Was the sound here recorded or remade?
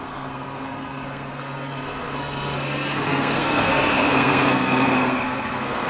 remade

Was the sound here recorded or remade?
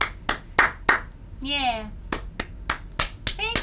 recorded